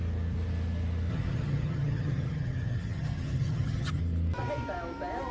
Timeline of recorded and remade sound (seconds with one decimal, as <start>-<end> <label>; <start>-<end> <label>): 0.0-1.1 recorded; 1.1-4.0 remade; 4.0-5.3 recorded